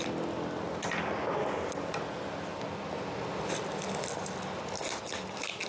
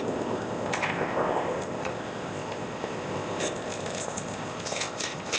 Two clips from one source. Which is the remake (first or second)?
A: second